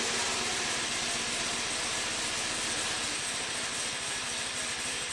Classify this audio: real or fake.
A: real